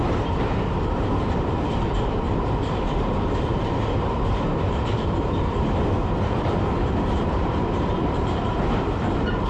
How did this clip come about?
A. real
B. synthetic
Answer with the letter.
B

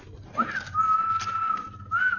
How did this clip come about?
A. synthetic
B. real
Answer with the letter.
B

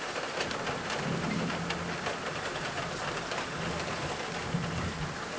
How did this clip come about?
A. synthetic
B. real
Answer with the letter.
B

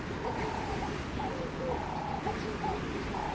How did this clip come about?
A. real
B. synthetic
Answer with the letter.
A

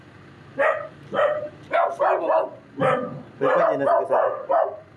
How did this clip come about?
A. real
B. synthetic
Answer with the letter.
A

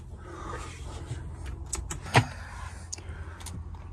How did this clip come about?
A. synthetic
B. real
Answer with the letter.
B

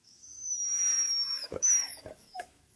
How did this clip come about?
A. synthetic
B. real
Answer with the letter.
A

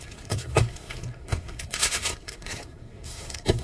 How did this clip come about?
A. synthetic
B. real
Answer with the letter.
A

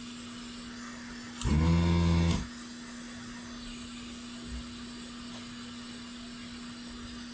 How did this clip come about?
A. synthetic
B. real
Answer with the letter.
B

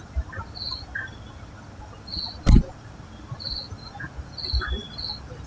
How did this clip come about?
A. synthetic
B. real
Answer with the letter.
B